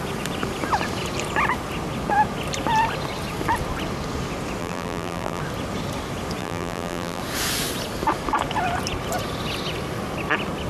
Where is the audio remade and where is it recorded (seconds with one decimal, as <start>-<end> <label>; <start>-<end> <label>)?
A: 0.0-4.6 recorded; 4.6-5.4 remade; 5.4-6.4 recorded; 6.4-7.2 remade; 7.2-10.7 recorded